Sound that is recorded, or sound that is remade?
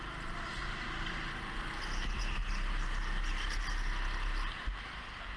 recorded